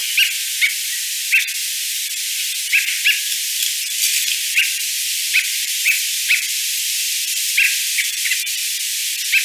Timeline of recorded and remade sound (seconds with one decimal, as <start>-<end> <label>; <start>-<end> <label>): 0.0-3.0 recorded; 3.0-8.6 remade; 8.6-9.4 recorded